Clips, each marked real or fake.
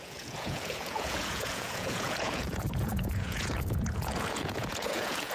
fake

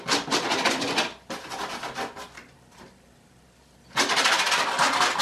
real